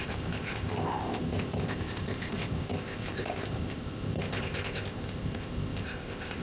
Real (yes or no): no